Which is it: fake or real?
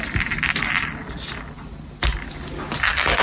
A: real